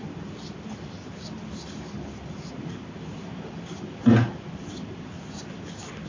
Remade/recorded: recorded